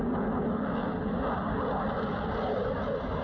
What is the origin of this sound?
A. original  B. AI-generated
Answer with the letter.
A